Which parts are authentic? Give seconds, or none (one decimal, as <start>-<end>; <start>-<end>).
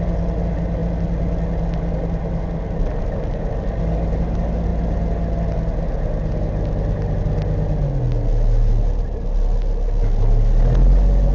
0.0-11.3